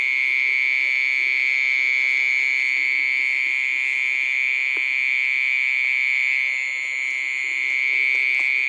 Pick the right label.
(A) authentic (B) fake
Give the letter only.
A